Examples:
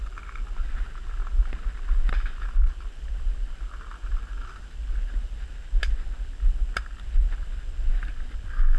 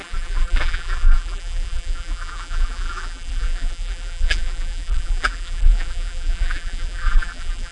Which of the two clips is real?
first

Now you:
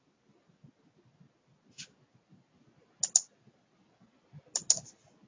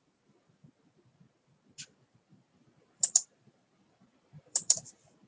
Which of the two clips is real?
first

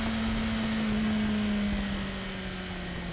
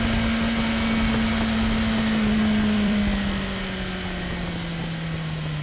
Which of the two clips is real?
first